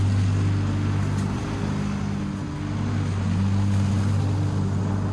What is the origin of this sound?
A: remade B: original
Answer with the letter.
B